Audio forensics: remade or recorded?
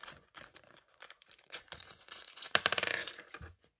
remade